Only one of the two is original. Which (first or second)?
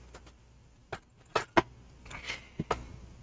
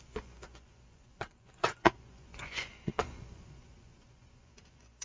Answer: first